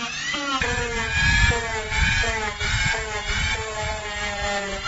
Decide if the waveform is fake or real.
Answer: fake